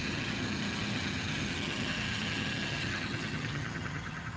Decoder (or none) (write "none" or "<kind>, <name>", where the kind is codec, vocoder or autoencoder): vocoder, HiFi-GAN